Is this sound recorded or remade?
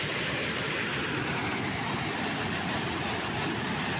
recorded